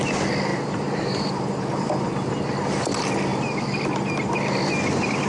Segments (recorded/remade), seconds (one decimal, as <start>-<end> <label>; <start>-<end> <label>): 0.0-0.5 recorded; 0.5-2.1 remade; 2.1-5.3 recorded